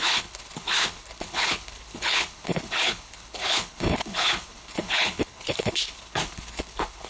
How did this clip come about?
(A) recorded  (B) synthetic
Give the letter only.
B